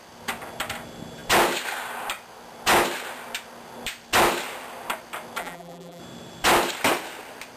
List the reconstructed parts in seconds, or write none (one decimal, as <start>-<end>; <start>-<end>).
5.4-6.0